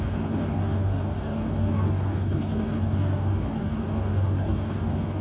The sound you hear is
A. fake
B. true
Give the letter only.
A